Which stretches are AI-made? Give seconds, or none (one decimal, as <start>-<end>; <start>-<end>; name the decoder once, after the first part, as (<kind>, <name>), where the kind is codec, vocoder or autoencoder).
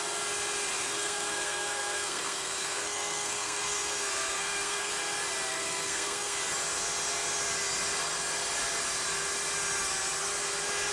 0.8-4.9 (codec, SNAC); 5.5-6.4